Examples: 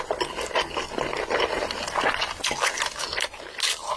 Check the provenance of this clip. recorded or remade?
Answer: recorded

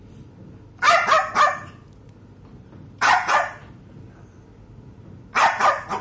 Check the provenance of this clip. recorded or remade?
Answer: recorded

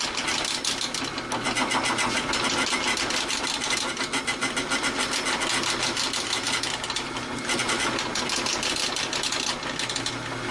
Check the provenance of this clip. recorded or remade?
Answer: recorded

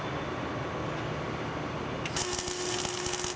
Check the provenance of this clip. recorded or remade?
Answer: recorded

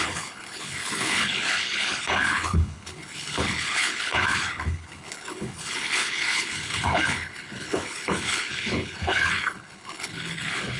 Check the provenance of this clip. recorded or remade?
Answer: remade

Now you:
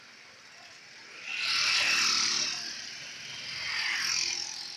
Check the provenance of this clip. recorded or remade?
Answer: recorded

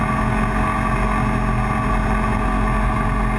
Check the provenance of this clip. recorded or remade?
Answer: recorded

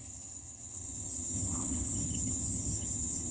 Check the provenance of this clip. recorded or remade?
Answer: remade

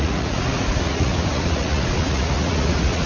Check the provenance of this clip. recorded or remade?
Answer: remade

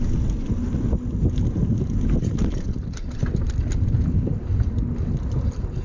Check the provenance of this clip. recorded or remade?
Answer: recorded